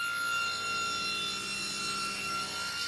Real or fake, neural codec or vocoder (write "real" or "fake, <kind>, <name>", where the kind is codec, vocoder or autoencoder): real